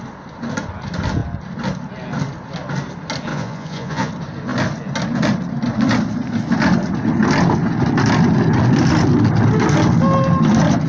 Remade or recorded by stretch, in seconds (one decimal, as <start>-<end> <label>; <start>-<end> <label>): 0.0-3.3 recorded; 3.3-4.1 remade; 4.1-10.9 recorded